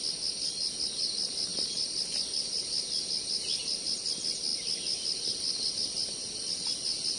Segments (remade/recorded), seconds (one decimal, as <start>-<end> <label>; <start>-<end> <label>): 0.0-7.2 recorded